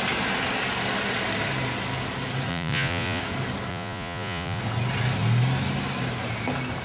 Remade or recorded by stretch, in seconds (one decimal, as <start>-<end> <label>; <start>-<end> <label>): 0.0-2.5 recorded; 2.5-3.2 remade; 3.2-3.7 recorded; 3.7-4.6 remade; 4.6-6.8 recorded